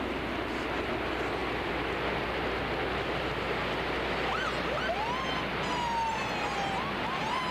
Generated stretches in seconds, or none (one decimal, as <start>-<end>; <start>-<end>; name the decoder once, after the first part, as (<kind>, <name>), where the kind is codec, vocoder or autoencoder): none